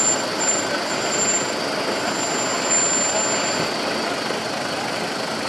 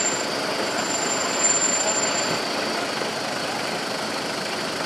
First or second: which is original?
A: first